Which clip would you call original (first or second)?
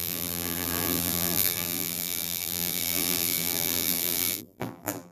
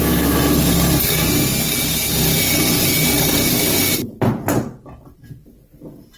second